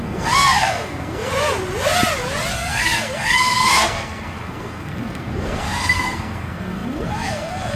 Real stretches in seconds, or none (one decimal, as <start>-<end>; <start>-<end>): 1.3-2.5